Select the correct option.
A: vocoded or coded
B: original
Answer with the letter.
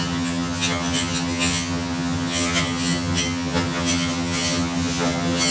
A